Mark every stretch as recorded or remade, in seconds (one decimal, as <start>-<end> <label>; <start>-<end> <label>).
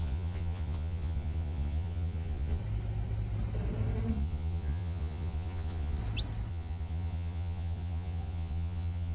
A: 0.0-2.6 remade; 2.6-4.1 recorded; 4.1-6.0 remade; 6.0-6.5 recorded; 6.5-9.1 remade